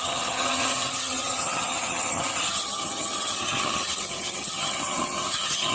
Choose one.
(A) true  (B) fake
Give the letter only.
B